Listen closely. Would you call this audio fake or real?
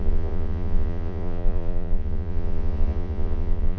fake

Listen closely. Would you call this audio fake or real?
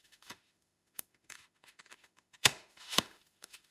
fake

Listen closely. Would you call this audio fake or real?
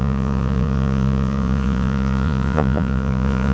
fake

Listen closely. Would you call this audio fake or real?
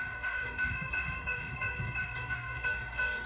fake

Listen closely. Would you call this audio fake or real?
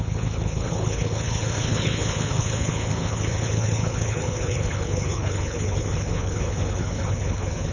fake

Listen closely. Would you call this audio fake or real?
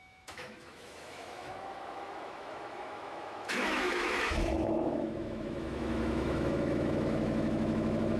fake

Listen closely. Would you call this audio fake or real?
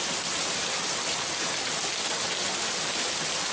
real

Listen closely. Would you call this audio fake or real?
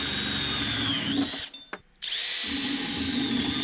real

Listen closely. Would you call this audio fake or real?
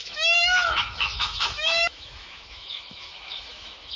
fake